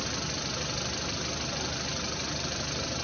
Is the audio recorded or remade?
recorded